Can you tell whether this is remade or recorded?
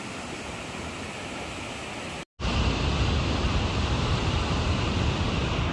recorded